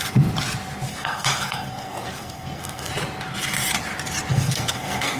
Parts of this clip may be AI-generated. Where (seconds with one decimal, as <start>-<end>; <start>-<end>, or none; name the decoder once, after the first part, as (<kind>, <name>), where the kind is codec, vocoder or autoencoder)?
0.9-2.9 (codec, SNAC); 4.3-5.2